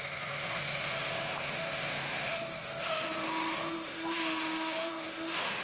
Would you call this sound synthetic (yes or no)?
yes